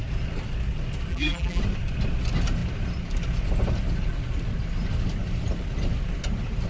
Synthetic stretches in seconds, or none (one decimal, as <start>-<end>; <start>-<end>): 1.1-1.6